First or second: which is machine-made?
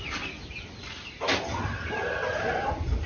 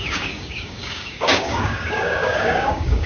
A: second